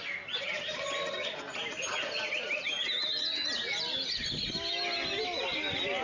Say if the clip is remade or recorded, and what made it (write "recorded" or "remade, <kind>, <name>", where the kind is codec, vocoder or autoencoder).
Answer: recorded